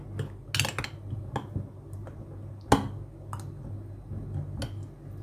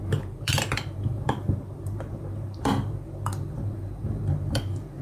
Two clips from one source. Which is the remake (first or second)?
second